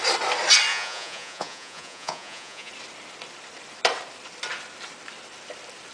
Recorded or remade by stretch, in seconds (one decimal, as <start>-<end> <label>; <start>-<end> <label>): 0.0-0.7 recorded; 0.7-2.7 remade; 2.7-5.9 recorded

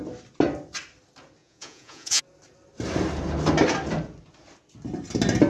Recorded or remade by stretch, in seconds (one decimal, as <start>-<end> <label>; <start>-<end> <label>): 0.0-1.4 recorded; 1.4-2.2 remade; 2.2-5.5 recorded

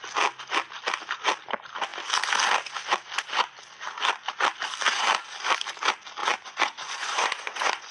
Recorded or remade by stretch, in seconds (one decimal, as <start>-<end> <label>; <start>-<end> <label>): 0.0-6.2 recorded; 6.2-7.9 remade

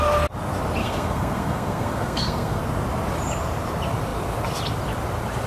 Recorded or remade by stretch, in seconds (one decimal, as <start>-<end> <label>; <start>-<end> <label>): 0.0-0.8 recorded; 0.8-2.6 remade; 2.6-5.5 recorded

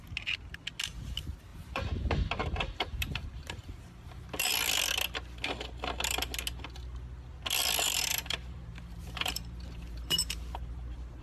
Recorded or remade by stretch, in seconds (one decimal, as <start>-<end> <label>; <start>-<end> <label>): 0.0-1.5 recorded; 1.5-4.5 remade; 4.5-8.1 recorded; 8.1-11.2 remade

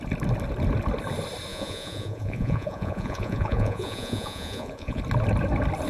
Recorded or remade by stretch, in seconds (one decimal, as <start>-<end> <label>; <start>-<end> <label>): 0.0-1.5 recorded; 1.5-5.0 remade; 5.0-5.9 recorded